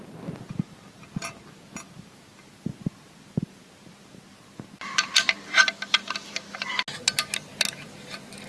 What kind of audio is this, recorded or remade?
recorded